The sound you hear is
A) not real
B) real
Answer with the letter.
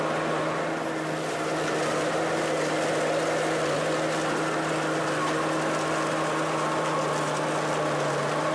B